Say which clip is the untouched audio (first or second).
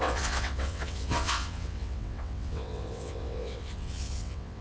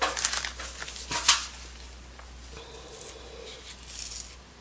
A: second